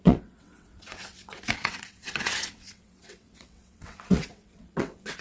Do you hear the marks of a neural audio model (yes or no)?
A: yes